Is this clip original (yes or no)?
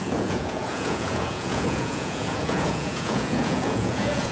no